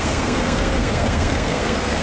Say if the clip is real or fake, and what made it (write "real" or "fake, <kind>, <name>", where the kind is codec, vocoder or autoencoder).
fake, codec, SNAC